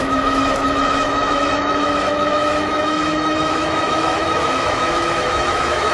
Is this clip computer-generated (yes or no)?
yes